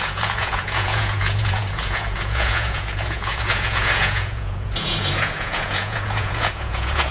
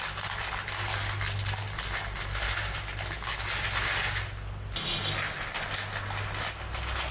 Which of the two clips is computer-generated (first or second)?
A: first